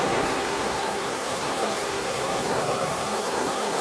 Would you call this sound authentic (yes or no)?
no